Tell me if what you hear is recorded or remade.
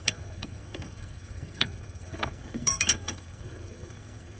remade